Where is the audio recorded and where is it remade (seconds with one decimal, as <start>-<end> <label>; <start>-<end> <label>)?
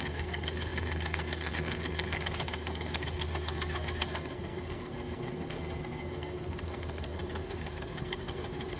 0.0-8.8 remade